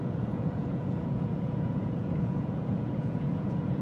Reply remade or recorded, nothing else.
remade